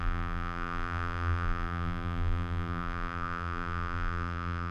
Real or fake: fake